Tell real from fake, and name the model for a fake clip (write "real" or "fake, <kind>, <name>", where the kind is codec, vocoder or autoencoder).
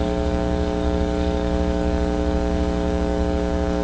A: fake, codec, DAC